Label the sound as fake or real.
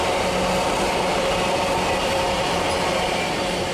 real